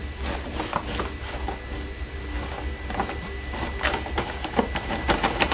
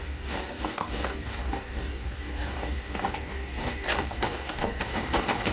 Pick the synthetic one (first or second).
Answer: second